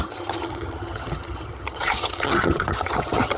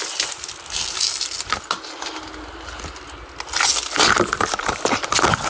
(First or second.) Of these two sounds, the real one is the second